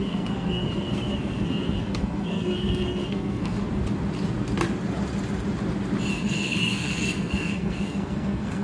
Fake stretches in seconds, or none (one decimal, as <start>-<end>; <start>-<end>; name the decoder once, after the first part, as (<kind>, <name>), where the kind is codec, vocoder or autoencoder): 0.0-3.6 (codec, SNAC); 6.1-8.6